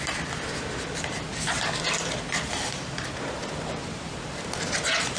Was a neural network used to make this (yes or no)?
yes